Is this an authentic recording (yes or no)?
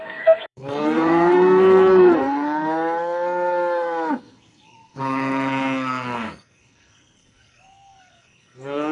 no